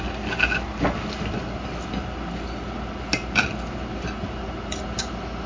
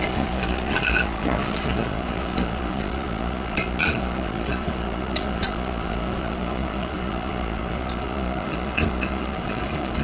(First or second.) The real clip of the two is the first